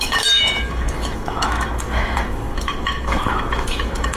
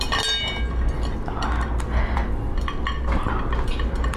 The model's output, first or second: first